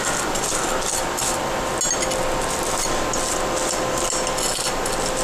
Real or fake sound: real